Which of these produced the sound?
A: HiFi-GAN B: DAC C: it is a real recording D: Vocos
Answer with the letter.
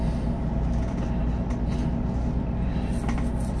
C